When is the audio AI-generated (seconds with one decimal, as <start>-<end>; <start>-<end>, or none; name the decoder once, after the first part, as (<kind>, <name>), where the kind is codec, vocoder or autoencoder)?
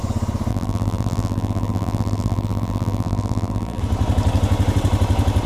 0.5-3.8 (vocoder, BigVGAN v2)